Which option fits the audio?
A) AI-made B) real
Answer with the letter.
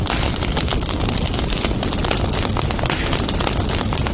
B